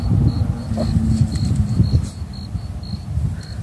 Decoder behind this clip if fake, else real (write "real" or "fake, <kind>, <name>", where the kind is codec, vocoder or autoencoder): real